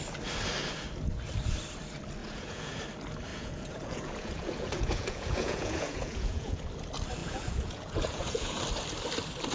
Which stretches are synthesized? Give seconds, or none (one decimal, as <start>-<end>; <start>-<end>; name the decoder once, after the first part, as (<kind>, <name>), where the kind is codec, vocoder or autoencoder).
2.2-2.8 (vocoder, Vocos); 3.3-6.6; 7.2-8.6